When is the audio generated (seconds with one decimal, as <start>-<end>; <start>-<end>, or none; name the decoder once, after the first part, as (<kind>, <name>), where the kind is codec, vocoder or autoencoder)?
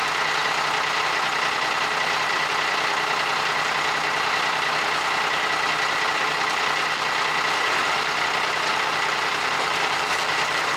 8.7-10.8 (vocoder, BigVGAN v2)